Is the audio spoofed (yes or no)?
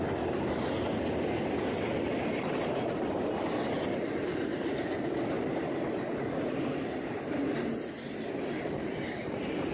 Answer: no